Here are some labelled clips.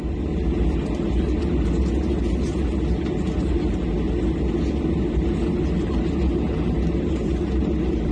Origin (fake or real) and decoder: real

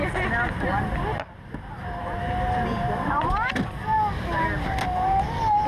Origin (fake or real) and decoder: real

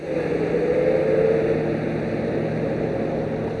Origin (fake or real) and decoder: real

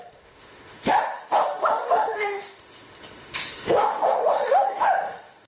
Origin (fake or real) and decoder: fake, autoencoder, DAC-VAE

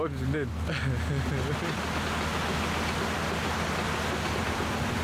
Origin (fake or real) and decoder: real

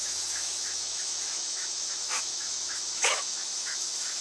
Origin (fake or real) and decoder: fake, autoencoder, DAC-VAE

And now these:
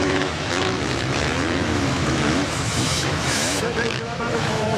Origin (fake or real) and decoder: fake, autoencoder, DAC-VAE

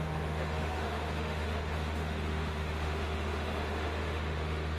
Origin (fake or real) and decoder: fake, autoencoder, DAC-VAE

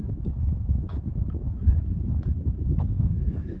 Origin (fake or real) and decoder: fake, autoencoder, DAC-VAE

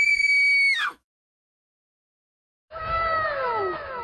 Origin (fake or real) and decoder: fake, autoencoder, DAC-VAE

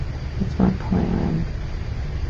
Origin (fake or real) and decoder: real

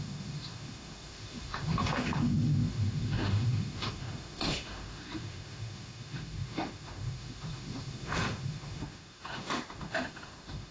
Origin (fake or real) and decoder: fake, autoencoder, DAC-VAE